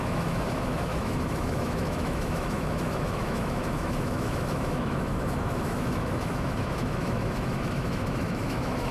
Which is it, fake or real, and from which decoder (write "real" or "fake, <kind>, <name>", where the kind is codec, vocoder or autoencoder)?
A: fake, autoencoder, DAC-VAE